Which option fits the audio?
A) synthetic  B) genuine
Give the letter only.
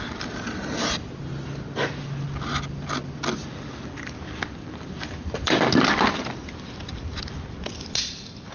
B